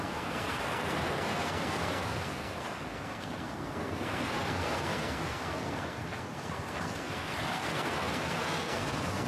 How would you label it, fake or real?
fake